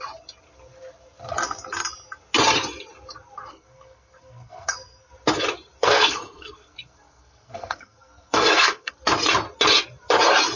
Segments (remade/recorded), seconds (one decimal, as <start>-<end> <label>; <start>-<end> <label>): 0.0-3.5 recorded; 3.5-5.1 remade; 5.1-5.8 recorded; 5.8-8.9 remade; 8.9-10.6 recorded